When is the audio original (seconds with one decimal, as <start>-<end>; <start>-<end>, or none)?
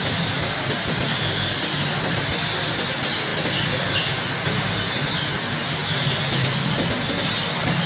5.8-7.1